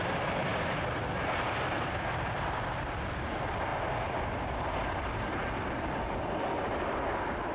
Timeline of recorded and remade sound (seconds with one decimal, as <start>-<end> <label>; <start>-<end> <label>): 0.0-0.5 remade; 0.5-1.8 recorded; 1.8-7.5 remade